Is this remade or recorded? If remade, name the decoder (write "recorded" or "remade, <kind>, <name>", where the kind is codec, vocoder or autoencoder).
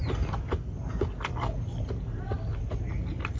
recorded